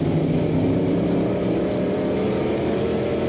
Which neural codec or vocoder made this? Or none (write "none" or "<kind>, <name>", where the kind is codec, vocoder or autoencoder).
none